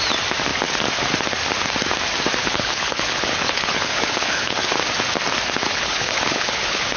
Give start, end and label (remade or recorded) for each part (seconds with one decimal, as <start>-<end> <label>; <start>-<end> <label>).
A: 0.0-2.4 recorded; 2.4-4.7 remade; 4.7-5.6 recorded; 5.6-7.0 remade